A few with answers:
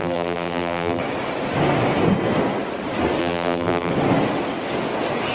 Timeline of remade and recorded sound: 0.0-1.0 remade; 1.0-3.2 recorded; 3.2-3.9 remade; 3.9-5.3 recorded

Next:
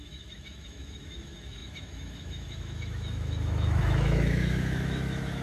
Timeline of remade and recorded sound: 0.0-5.4 remade

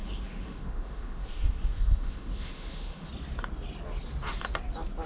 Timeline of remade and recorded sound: 0.0-3.1 remade; 3.1-5.1 recorded

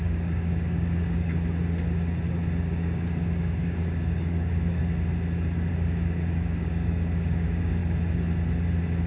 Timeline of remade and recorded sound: 0.0-1.3 remade; 1.3-2.6 recorded; 2.6-4.8 remade; 4.8-5.7 recorded; 5.7-7.8 remade; 7.8-9.1 recorded

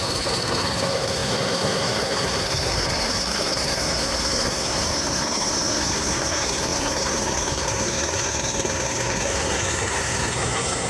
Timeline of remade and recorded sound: 0.0-10.9 remade